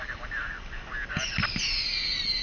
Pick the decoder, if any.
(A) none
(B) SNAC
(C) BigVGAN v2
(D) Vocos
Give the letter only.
C